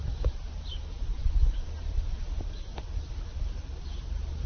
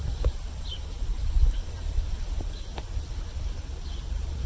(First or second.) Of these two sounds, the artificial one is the second